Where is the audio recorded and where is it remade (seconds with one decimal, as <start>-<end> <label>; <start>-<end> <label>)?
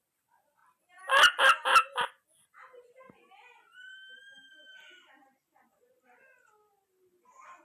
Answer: 0.0-7.6 recorded